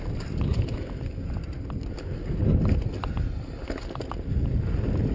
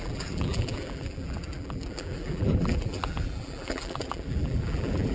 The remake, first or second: second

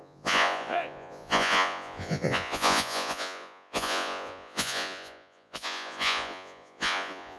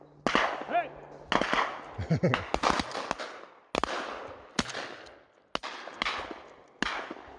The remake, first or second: first